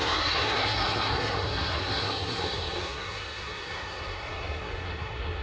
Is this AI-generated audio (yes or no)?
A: yes